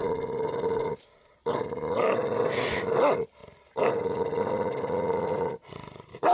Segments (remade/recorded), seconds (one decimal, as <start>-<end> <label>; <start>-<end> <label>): 0.0-6.3 recorded